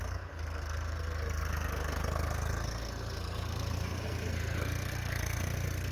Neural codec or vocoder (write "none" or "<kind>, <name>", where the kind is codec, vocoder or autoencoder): codec, SNAC